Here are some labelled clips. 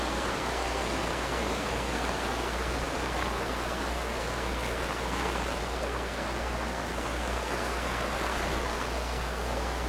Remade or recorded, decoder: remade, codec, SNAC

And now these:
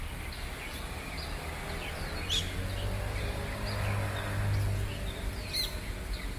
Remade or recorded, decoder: recorded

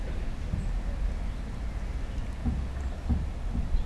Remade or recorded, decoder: recorded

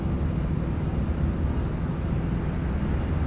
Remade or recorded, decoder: recorded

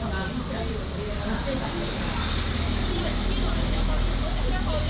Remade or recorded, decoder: recorded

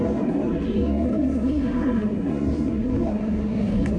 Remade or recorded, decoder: remade, codec, SNAC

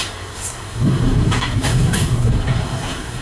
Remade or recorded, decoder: remade, codec, SNAC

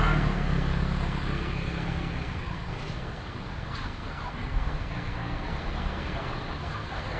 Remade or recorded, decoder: remade, codec, SNAC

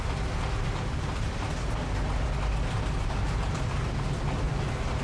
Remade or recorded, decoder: recorded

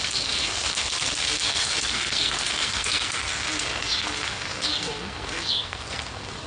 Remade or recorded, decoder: remade, codec, SNAC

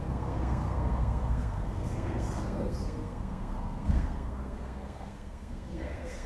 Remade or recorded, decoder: remade, codec, SNAC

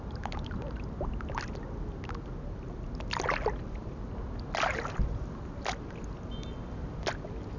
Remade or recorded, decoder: recorded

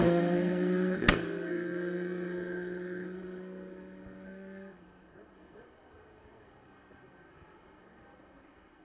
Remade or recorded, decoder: remade, codec, SNAC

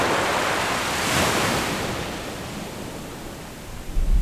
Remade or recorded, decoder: recorded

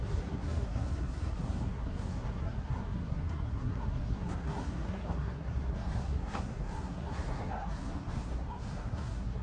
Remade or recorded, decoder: remade, codec, SNAC